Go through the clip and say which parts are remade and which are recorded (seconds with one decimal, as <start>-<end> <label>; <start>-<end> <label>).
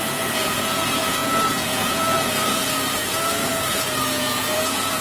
0.0-5.0 remade